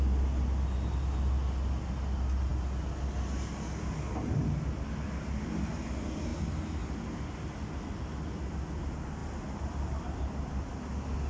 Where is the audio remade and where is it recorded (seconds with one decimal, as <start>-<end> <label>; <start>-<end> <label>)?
0.0-11.3 recorded